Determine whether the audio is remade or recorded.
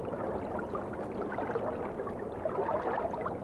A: recorded